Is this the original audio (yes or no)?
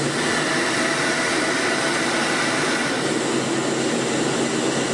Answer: yes